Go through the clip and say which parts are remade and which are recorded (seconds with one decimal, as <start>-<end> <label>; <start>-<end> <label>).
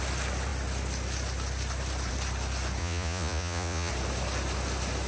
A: 0.0-2.8 recorded; 2.8-3.9 remade; 3.9-5.1 recorded